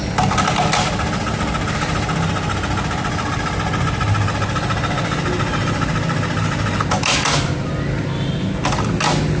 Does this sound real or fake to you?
real